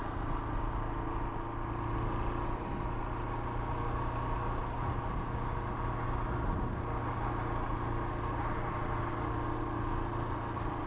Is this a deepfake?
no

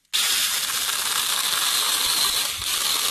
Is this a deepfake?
no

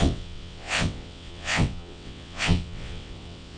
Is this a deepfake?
yes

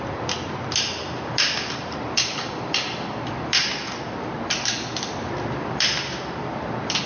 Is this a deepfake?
yes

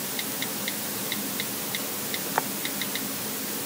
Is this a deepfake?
no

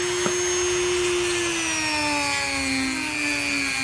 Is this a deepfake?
no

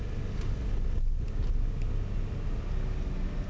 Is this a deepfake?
no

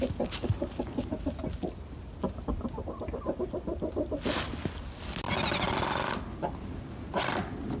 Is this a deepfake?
no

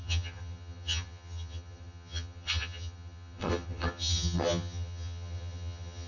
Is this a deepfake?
yes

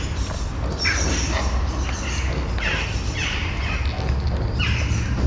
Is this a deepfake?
no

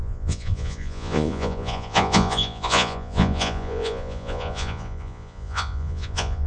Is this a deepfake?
yes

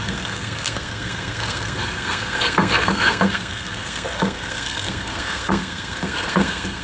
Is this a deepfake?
yes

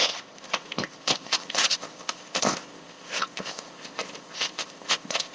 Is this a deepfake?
yes